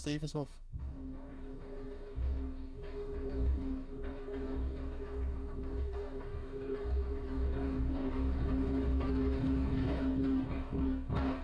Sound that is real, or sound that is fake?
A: fake